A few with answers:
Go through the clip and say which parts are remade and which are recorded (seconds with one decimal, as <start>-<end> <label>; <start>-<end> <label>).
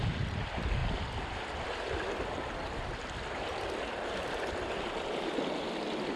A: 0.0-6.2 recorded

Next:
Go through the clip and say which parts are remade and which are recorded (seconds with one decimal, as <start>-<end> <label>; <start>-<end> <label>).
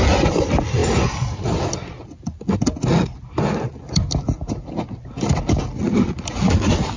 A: 0.0-7.0 recorded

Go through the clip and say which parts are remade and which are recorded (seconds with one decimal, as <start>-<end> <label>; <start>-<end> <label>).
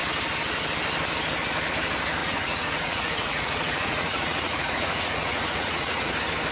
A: 0.0-2.2 recorded; 2.2-6.1 remade; 6.1-6.5 recorded